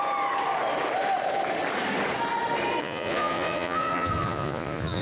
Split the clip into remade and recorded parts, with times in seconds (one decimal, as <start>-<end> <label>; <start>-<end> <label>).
0.0-2.8 recorded; 2.8-5.0 remade